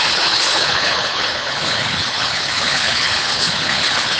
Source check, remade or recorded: remade